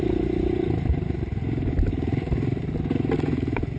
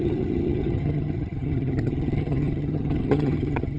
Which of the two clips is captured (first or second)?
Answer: first